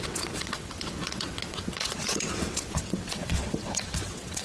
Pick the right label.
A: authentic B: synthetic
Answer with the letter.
B